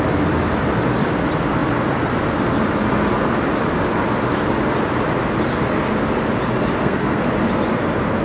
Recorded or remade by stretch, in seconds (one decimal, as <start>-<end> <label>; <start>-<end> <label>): 0.0-6.8 recorded; 6.8-7.3 remade; 7.3-8.2 recorded